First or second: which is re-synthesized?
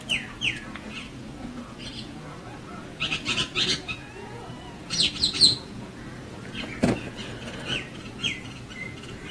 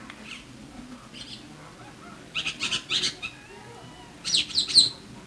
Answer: first